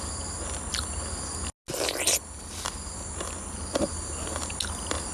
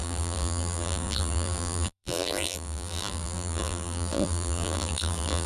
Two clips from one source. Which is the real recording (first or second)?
first